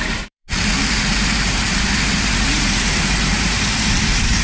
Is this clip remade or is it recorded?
remade